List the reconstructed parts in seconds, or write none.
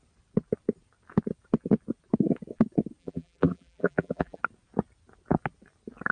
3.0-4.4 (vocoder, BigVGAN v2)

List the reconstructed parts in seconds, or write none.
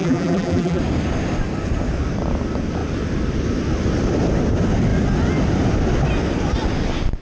0.0-0.8 (vocoder, BigVGAN v2)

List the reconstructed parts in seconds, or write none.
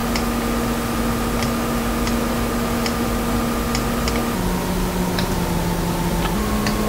none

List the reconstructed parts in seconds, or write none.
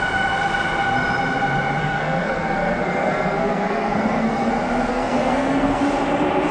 1.8-4.5 (codec, SNAC); 4.9-5.8